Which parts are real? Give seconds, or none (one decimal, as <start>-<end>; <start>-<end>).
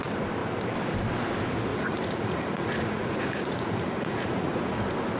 0.0-1.7; 4.8-5.2